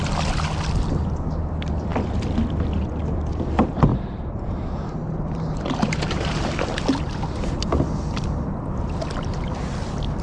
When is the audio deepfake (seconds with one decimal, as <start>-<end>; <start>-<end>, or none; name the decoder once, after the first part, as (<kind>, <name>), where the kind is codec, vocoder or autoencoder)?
3.9-6.8 (vocoder, BigVGAN v2)